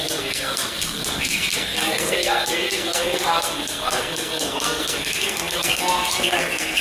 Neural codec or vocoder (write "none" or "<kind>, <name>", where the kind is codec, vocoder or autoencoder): codec, SNAC